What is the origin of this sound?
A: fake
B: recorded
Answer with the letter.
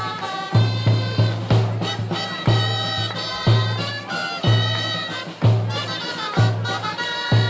B